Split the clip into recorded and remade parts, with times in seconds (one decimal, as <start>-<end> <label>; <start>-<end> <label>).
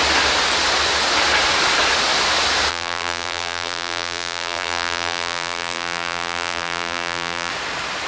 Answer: 0.0-2.7 recorded; 2.7-7.5 remade; 7.5-8.1 recorded